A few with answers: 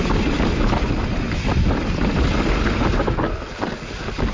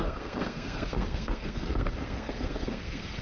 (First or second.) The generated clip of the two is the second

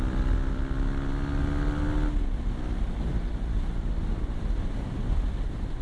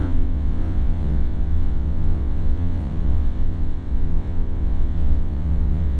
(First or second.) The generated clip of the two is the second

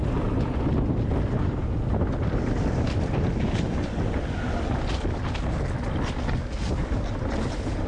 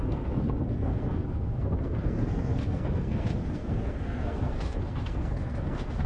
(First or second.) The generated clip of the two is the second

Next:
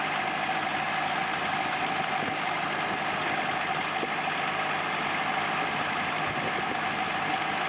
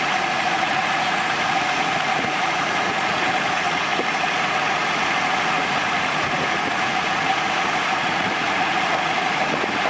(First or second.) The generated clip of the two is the second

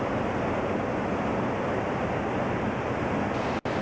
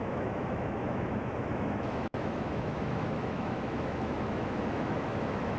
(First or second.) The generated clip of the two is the second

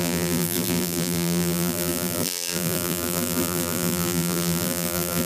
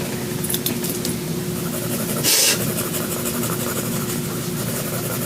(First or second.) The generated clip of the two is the first